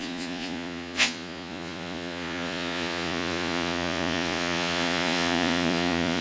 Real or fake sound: fake